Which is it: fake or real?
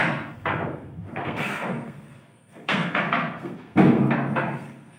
fake